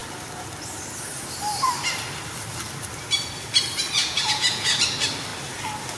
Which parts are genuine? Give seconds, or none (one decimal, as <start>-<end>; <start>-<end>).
0.0-4.0; 4.8-6.0